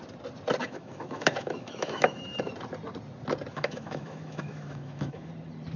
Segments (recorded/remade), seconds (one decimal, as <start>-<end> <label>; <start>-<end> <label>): 0.0-0.6 recorded; 0.6-2.5 remade; 2.5-3.5 recorded; 3.5-5.3 remade; 5.3-5.8 recorded